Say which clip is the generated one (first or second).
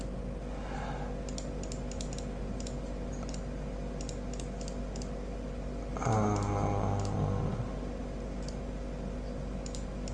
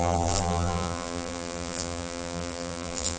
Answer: second